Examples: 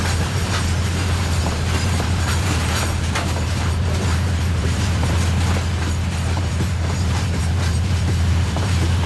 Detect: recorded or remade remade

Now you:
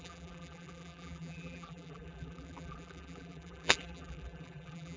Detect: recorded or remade remade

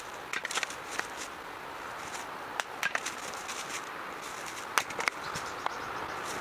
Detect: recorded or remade recorded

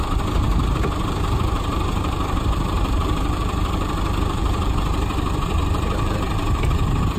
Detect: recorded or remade remade